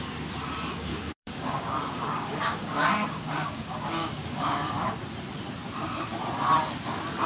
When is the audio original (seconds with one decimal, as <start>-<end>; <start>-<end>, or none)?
0.0-0.9; 4.9-7.3